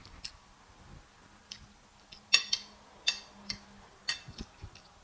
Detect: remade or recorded recorded